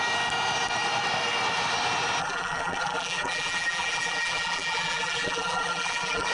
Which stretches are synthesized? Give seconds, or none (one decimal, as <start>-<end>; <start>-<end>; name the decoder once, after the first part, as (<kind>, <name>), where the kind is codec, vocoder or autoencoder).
2.2-6.3 (vocoder, BigVGAN v2)